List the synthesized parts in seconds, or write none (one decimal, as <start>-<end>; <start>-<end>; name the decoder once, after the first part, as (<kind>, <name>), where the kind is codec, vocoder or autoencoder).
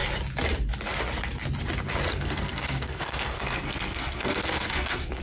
2.1-5.2 (codec, SNAC)